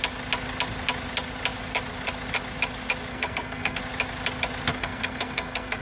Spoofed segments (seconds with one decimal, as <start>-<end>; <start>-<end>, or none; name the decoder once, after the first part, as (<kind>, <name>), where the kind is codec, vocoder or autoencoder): 3.1-3.8 (codec, SNAC); 4.7-5.8